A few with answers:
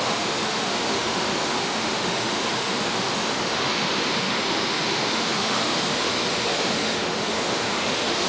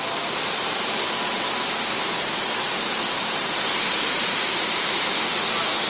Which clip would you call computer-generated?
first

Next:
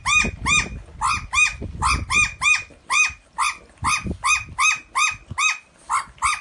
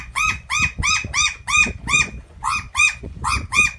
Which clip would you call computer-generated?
second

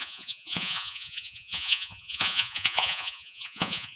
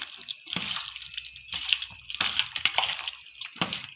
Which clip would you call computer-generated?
first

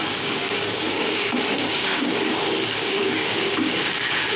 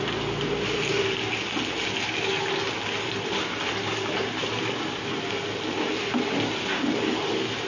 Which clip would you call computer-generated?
first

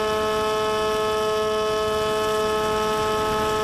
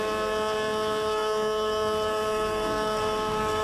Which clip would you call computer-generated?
second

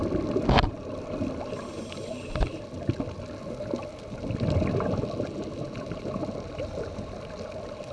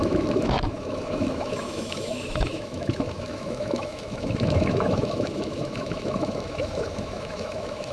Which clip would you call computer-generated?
second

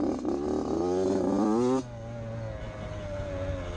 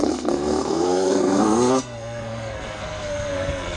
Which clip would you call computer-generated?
second